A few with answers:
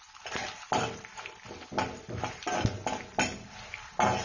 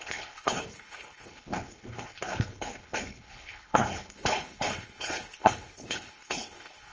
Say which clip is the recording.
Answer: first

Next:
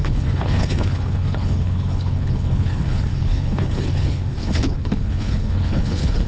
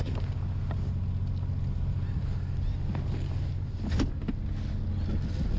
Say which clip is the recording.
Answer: second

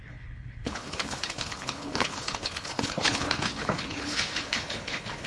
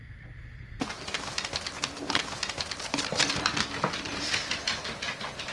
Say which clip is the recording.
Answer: second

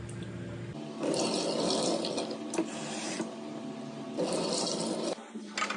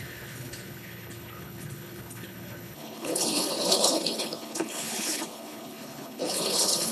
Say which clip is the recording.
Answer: first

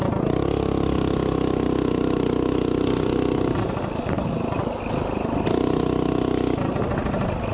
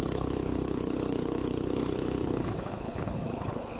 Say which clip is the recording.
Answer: first